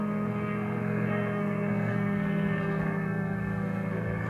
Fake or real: fake